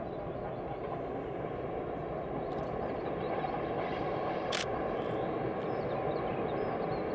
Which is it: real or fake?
real